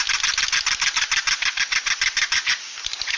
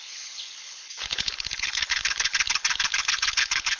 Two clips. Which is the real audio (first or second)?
first